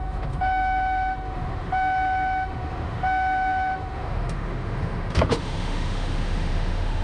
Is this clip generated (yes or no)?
yes